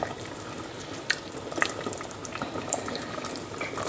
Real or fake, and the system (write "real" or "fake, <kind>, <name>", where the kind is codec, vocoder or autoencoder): fake, vocoder, BigVGAN v2